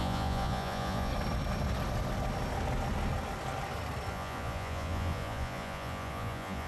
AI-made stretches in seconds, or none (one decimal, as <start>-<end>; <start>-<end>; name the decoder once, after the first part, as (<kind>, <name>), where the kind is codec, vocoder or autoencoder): 0.0-1.1 (vocoder, Vocos); 4.1-6.7